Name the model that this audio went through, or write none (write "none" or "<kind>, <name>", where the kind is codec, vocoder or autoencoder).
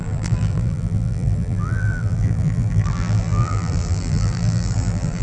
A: vocoder, BigVGAN v2